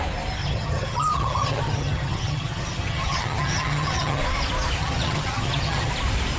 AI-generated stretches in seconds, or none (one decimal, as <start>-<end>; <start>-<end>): 0.4-4.2; 4.8-5.9